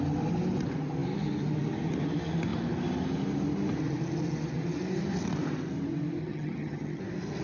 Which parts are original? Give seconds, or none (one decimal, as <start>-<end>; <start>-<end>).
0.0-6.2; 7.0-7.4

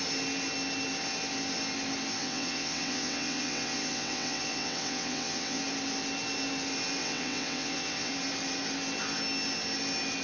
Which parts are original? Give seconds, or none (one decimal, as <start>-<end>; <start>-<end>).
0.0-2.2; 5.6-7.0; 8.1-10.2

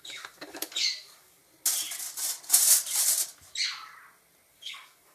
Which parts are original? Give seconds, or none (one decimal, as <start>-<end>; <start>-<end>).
1.4-4.5

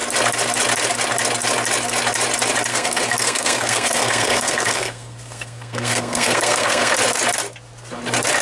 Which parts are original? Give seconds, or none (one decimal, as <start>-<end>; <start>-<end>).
0.0-2.7; 6.9-8.4

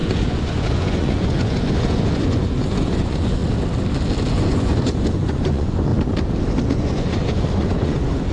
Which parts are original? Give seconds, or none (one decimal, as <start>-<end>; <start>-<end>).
3.4-4.3; 5.9-6.7